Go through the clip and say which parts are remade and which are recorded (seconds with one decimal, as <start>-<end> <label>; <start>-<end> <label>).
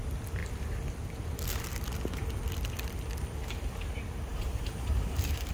0.0-3.4 recorded; 3.4-3.9 remade; 3.9-4.3 recorded; 4.3-5.5 remade